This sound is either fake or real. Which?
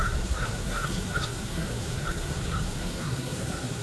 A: fake